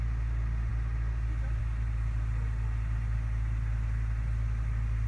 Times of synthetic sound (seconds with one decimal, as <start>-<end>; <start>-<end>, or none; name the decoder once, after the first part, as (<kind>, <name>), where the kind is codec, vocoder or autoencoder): none